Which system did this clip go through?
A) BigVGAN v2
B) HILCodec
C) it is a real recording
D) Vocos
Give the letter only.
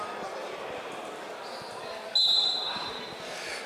C